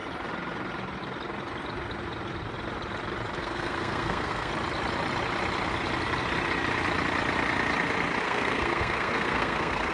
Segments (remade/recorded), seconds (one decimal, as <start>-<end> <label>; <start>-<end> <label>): 0.0-3.4 recorded; 3.4-4.5 remade; 4.5-8.2 recorded; 8.2-9.9 remade